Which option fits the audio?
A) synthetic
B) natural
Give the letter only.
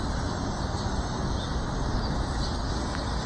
B